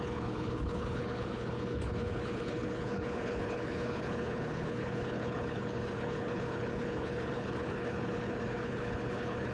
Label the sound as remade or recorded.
remade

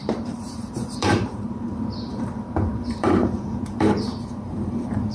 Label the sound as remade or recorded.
remade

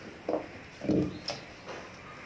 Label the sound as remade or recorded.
recorded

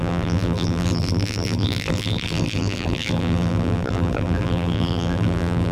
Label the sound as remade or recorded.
remade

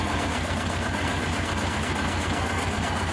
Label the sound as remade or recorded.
remade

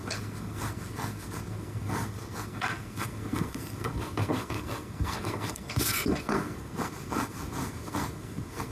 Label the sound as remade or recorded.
remade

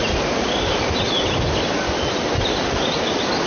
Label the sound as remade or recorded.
recorded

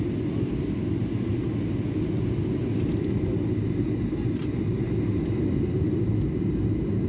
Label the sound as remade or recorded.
recorded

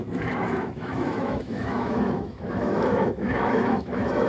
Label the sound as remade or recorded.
remade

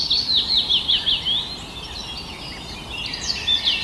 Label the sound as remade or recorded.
recorded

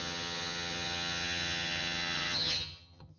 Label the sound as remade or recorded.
remade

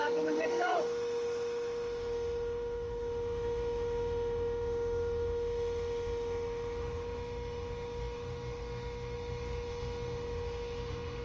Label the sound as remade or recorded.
remade